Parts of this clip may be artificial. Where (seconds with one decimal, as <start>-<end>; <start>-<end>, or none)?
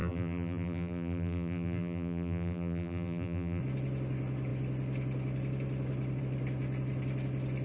0.0-3.6